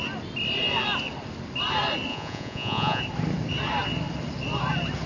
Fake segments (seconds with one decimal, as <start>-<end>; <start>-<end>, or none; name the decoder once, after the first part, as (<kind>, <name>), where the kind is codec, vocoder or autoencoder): 2.1-3.0 (vocoder, Vocos)